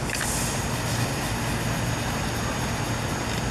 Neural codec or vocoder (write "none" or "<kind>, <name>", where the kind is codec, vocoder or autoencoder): none